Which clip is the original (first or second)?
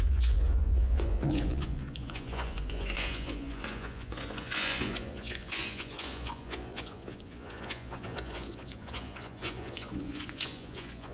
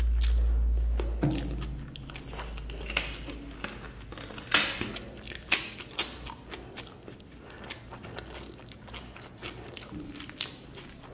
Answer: second